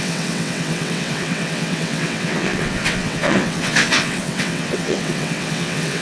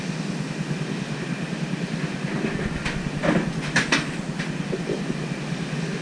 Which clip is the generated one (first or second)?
first